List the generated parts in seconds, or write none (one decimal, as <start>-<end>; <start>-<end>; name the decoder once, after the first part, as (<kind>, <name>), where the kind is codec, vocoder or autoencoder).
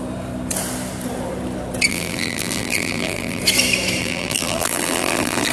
1.9-3.4 (vocoder, BigVGAN v2); 4.0-5.5